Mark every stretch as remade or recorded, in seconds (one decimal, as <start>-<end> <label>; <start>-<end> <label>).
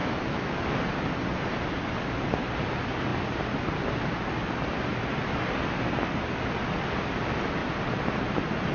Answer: 0.0-0.8 remade; 0.8-8.7 recorded